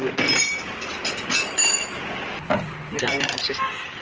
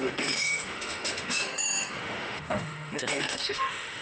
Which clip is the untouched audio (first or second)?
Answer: first